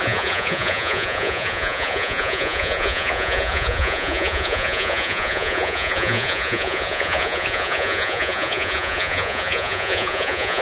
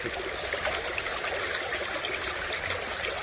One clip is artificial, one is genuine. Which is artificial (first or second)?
first